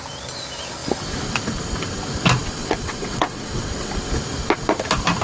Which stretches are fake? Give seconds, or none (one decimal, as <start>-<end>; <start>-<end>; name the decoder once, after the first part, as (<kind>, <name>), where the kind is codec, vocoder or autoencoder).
2.4-3.9 (vocoder, WaveNeXt)